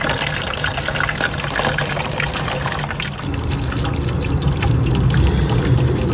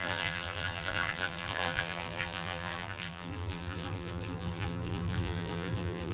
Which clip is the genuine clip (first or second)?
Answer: first